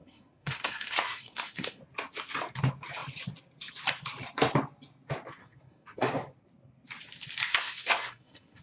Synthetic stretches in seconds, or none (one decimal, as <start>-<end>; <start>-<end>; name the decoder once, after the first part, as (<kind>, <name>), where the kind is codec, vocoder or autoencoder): 0.0-1.8 (codec, SNAC); 5.4-6.1; 7.5-8.6